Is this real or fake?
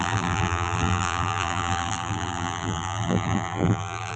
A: fake